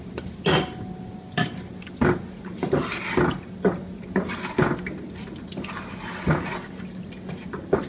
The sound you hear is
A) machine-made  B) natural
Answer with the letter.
B